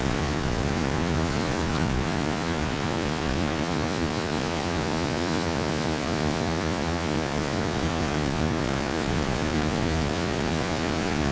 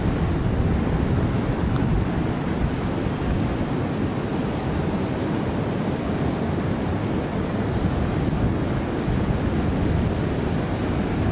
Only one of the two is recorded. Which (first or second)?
second